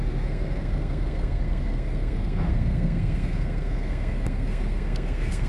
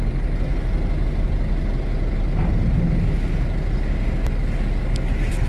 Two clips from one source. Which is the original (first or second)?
second